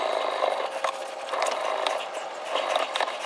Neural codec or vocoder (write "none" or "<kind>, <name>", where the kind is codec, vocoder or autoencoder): none